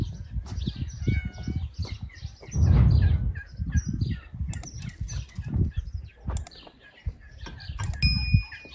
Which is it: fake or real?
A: real